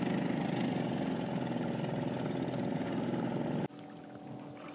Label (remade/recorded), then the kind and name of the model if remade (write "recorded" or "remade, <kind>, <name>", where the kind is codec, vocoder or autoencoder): recorded